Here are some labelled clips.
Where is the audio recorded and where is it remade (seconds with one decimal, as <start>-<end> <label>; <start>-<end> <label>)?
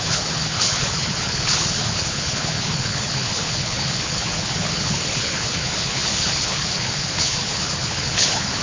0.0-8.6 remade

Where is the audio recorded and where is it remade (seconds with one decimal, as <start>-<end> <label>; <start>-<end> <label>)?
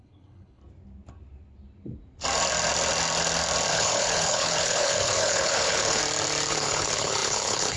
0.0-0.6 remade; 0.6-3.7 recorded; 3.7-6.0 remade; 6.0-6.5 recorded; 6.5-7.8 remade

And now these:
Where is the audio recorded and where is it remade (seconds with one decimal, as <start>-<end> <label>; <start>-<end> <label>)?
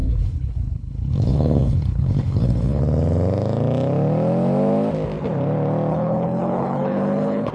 0.0-2.8 remade; 2.8-5.9 recorded; 5.9-7.5 remade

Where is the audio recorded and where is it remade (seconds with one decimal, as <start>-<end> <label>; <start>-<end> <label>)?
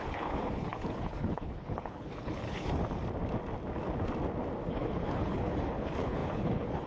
0.0-2.8 remade; 2.8-4.7 recorded; 4.7-6.9 remade